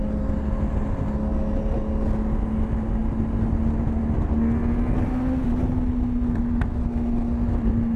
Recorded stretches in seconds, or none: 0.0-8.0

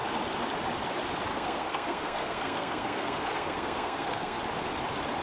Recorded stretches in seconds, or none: 0.0-1.3; 4.4-5.2

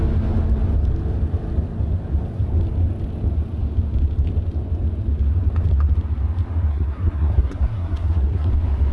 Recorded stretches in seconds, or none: 0.0-6.7; 8.5-8.9

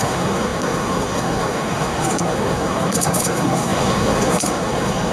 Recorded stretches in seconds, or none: none

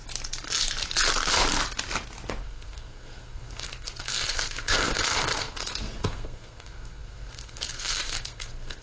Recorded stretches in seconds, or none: 0.0-2.4

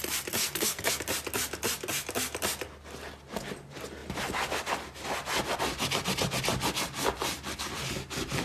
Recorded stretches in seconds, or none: 0.0-0.4; 1.0-8.4

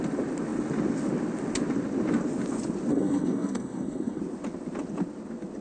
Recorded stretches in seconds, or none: 0.0-2.9; 4.2-5.6